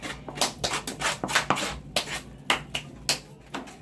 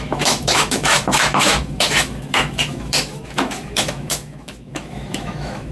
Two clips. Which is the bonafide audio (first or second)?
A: first